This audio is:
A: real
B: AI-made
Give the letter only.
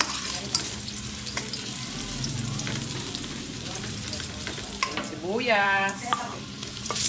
B